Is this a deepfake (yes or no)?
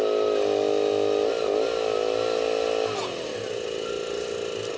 no